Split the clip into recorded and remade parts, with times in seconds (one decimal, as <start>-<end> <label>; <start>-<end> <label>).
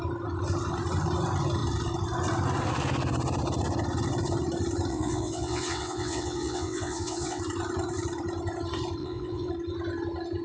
0.0-4.9 recorded; 4.9-7.4 remade; 7.4-9.0 recorded; 9.0-9.5 remade; 9.5-10.4 recorded